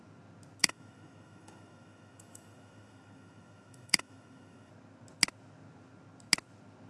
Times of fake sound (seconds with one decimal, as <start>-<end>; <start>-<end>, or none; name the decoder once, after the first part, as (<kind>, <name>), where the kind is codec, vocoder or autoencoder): 0.6-4.7 (autoencoder, DAC-VAE)